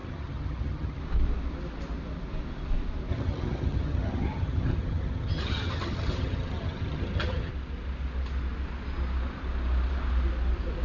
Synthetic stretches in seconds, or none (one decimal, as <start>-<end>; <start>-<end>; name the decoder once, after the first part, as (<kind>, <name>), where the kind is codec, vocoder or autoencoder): 0.0-1.0 (vocoder, HiFi-GAN); 3.1-7.5